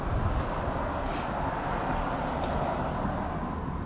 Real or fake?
real